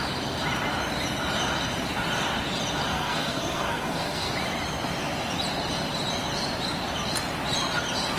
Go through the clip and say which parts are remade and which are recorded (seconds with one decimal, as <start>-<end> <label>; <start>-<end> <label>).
0.0-2.9 recorded; 2.9-4.3 remade; 4.3-8.2 recorded